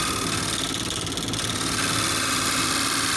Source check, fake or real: real